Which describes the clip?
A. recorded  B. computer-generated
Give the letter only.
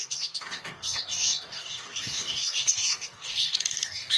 B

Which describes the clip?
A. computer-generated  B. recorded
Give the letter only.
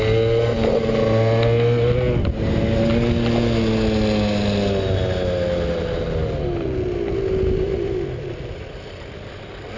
B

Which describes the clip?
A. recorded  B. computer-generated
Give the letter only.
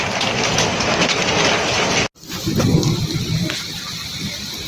A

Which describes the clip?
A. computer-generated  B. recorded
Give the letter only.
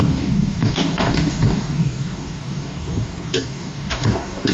A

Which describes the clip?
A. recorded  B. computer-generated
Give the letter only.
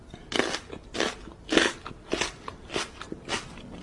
A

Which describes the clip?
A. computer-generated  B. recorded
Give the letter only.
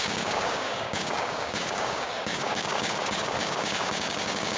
A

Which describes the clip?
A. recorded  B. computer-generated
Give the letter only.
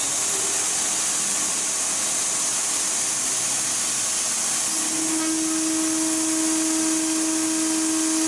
A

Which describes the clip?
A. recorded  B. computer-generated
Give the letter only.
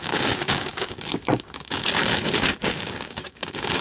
B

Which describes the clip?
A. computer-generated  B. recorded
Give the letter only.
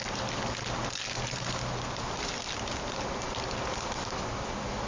B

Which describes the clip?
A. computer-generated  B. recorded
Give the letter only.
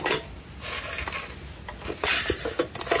B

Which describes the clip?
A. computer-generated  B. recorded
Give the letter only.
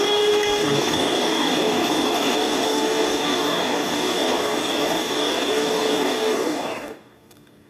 A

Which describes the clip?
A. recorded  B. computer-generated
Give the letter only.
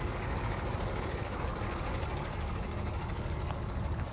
B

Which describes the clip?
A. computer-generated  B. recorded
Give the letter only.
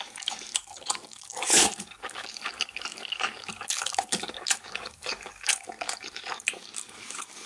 A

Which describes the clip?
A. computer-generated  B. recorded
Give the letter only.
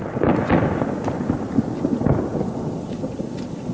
B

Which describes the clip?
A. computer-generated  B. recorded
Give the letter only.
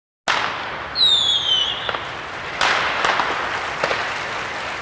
B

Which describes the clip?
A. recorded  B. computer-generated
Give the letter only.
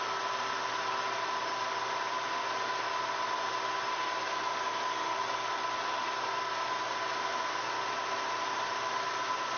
A